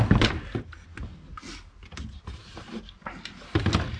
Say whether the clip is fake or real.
real